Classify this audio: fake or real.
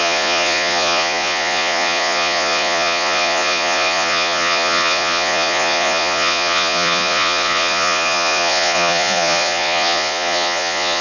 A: fake